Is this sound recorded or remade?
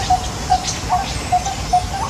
recorded